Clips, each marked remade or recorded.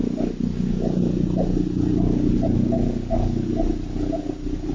recorded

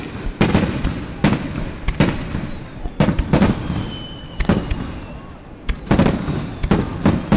recorded